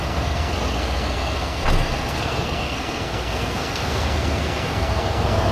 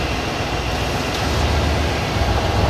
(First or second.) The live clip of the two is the second